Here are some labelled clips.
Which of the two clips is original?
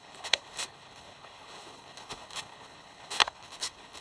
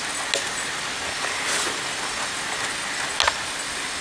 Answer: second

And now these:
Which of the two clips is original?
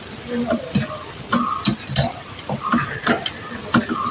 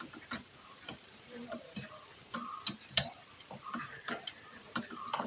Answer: first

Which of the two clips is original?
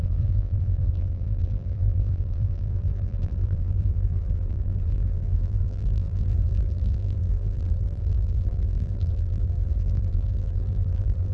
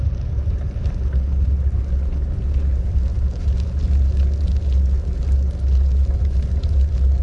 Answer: second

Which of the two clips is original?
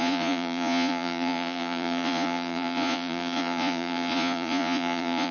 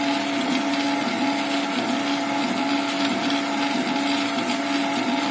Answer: second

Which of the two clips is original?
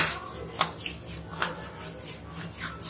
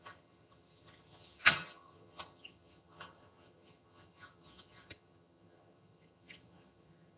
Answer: first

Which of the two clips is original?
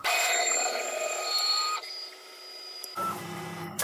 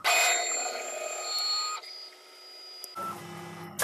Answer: second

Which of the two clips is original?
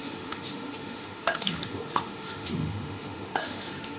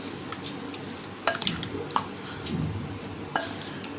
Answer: second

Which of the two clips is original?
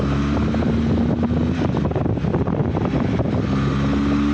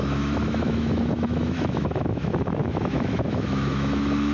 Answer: first